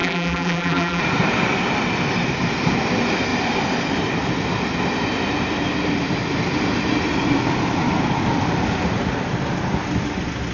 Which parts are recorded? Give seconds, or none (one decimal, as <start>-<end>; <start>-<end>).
1.0-10.5